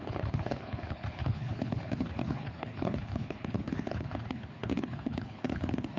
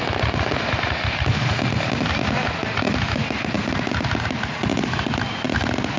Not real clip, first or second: first